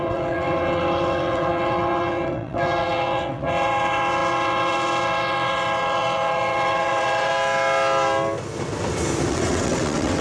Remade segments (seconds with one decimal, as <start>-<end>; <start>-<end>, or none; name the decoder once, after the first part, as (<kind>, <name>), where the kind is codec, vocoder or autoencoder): 0.0-7.3 (vocoder, WaveNeXt); 9.3-10.2

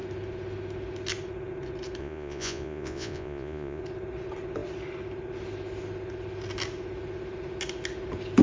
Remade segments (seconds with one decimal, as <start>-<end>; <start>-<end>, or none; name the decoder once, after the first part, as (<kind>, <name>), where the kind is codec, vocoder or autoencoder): 2.0-3.8 (vocoder, Vocos)

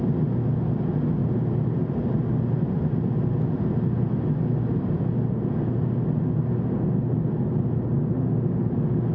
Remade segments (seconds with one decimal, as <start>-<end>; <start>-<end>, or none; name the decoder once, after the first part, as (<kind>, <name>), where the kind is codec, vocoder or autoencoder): none

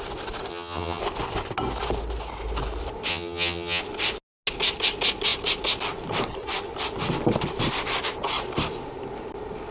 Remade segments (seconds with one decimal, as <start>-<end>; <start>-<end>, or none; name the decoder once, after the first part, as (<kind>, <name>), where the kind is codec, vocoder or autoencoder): 0.5-1.0 (vocoder, HiFi-GAN); 3.1-3.8

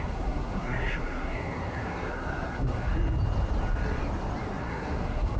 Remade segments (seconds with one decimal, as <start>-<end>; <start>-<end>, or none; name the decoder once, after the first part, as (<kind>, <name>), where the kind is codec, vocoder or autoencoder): 0.0-2.9 (codec, SNAC); 4.6-5.4